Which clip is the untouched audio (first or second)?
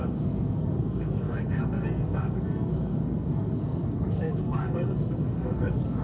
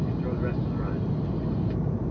second